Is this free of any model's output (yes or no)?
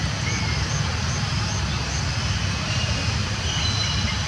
yes